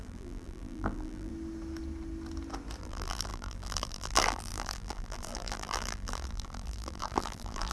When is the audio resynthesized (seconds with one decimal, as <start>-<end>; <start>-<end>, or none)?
0.0-1.3; 2.8-7.7